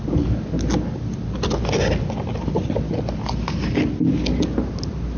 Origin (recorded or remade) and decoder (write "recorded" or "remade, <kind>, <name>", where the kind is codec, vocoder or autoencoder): recorded